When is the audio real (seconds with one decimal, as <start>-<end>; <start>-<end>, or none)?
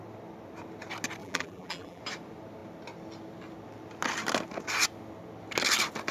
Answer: 0.0-1.2; 2.0-6.1